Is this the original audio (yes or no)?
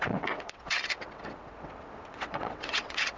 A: no